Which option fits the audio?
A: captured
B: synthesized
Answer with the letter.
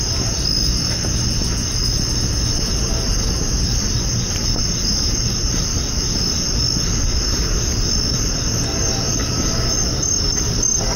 A